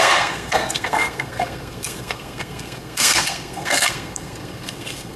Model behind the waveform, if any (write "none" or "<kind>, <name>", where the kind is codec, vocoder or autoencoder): codec, SNAC